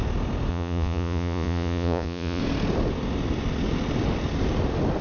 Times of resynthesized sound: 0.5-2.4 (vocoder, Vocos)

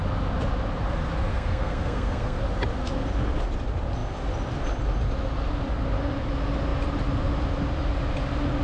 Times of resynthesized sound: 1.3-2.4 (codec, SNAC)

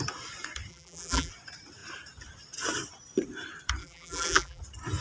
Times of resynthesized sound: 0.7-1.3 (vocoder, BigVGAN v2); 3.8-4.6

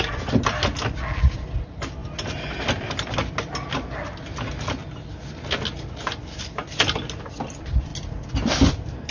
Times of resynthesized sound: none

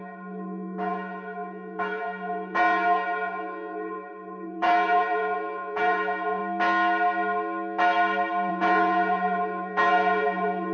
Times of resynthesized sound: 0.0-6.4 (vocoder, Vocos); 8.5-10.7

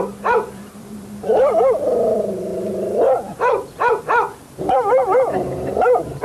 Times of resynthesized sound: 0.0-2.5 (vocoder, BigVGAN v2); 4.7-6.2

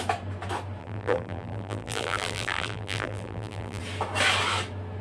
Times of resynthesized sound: 0.8-3.8 (vocoder, BigVGAN v2)